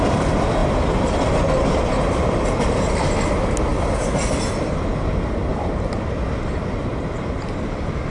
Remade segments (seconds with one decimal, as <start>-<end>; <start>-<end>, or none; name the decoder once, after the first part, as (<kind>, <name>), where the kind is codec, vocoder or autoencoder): none